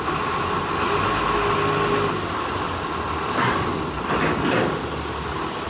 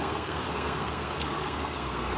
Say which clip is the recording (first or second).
first